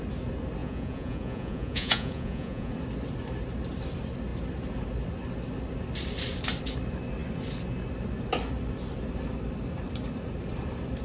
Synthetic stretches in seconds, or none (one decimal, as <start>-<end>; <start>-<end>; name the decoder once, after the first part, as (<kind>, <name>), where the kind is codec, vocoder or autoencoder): 0.6-2.7 (vocoder, Vocos)